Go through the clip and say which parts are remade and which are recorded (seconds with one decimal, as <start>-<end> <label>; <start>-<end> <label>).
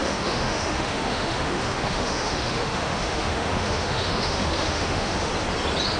0.0-5.3 remade; 5.3-6.0 recorded